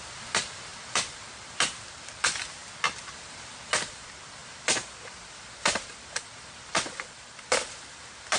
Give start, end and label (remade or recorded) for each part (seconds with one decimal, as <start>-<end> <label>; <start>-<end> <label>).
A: 0.0-2.6 remade; 2.6-3.1 recorded; 3.1-8.4 remade